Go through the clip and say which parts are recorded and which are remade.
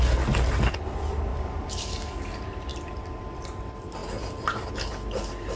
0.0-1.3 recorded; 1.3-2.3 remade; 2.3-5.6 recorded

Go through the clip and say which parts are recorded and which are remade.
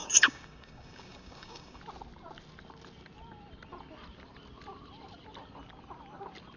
0.0-1.8 remade; 1.8-6.6 recorded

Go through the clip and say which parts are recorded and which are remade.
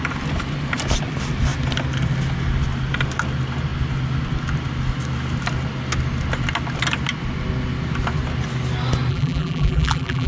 0.0-9.1 recorded; 9.1-10.3 remade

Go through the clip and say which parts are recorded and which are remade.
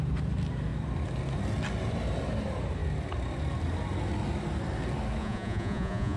0.0-5.2 recorded; 5.2-6.2 remade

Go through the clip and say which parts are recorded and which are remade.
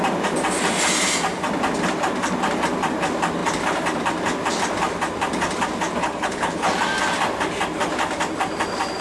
0.0-6.0 recorded; 6.0-6.7 remade; 6.7-9.0 recorded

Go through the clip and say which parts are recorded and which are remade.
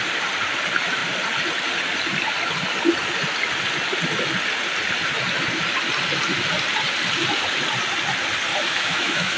0.0-8.5 recorded; 8.5-9.4 remade